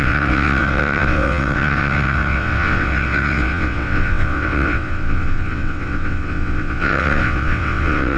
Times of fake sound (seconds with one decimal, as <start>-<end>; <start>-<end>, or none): 0.0-8.2